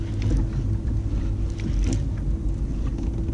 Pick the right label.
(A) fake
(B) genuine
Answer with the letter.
B